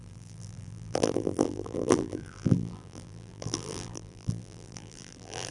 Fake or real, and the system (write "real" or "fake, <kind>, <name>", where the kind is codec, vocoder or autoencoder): fake, vocoder, BigVGAN v2